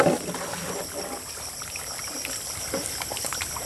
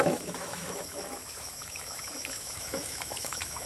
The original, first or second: first